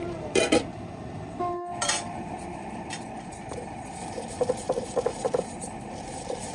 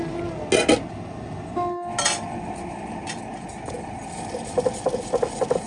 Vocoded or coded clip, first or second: first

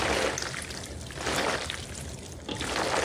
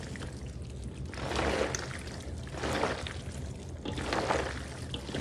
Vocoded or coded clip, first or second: first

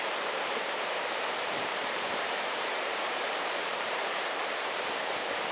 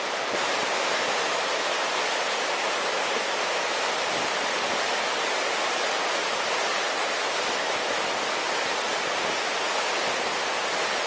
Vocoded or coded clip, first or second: first